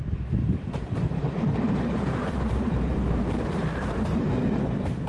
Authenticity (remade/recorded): remade